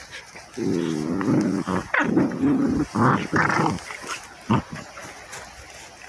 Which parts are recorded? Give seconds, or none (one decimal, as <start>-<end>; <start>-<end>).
0.0-1.8; 4.5-6.1